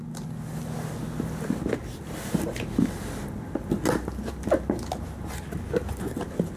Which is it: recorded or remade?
recorded